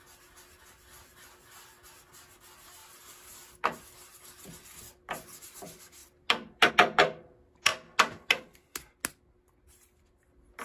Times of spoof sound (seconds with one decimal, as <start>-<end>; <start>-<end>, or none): none